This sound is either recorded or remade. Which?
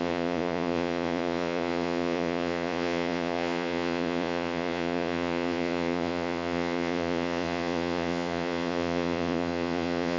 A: remade